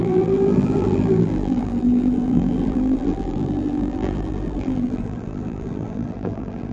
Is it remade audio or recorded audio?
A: remade